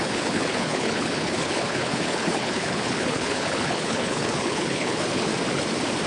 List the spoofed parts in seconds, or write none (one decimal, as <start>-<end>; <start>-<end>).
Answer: 0.0-5.3

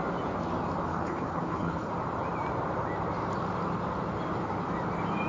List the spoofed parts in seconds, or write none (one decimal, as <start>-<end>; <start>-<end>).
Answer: 0.9-1.9

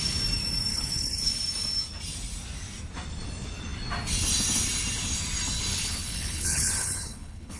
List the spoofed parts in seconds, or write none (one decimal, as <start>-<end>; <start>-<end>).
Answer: 0.7-1.3; 5.7-7.6

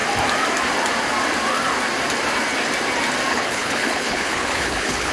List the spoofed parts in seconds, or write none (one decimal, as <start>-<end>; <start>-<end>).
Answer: 3.3-5.1